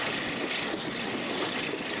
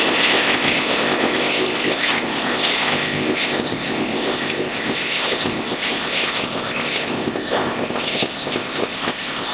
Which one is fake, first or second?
second